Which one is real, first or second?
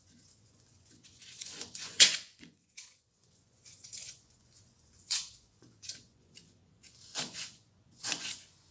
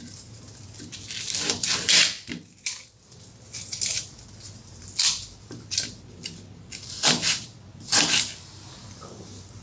second